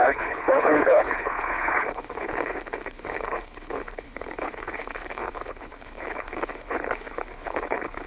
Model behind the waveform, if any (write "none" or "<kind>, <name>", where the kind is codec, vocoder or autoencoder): codec, HILCodec